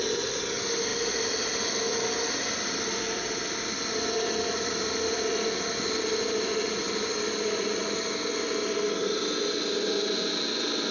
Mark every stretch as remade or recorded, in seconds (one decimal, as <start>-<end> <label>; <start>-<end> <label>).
0.0-10.9 recorded